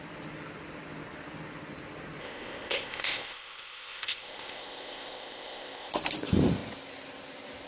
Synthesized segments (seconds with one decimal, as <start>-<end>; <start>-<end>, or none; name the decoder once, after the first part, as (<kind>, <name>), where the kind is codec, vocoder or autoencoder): 2.2-5.9 (codec, ZipCodec)